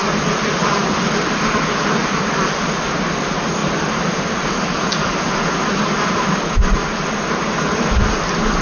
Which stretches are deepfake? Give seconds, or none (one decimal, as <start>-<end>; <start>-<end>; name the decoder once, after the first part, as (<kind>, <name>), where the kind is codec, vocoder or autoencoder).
none